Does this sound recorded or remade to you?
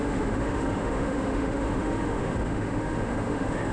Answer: remade